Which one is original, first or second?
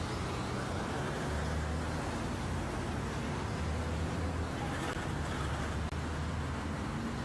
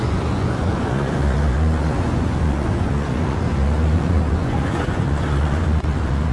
first